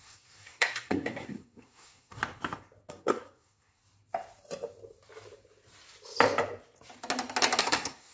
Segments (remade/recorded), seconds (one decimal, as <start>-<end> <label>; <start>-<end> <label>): 0.0-2.2 remade; 2.2-2.9 recorded; 2.9-3.8 remade; 3.8-7.6 recorded; 7.6-8.1 remade